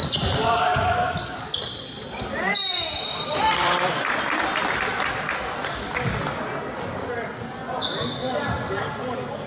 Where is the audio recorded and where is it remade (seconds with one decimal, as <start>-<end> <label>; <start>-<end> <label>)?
0.0-5.0 remade; 5.0-9.5 recorded